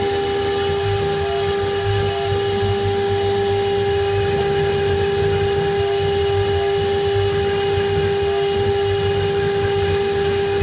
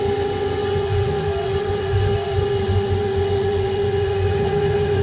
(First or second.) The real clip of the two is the first